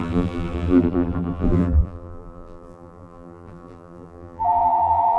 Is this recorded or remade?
remade